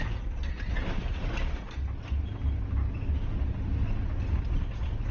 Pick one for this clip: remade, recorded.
recorded